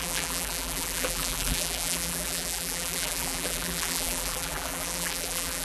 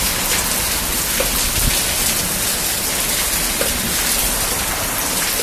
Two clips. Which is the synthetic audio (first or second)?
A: first